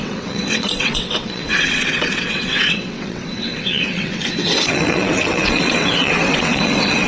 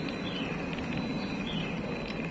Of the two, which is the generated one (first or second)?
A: first